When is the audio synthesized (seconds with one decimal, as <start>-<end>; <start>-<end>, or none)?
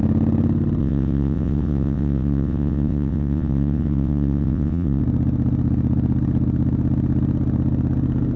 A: 0.8-5.0